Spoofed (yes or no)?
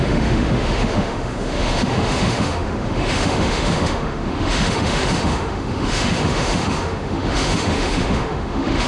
yes